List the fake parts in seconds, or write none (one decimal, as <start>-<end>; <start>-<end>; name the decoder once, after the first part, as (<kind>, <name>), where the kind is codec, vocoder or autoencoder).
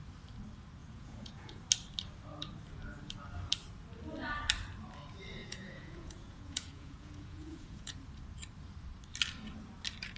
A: 0.8-1.6 (vocoder, Vocos); 5.4-8.0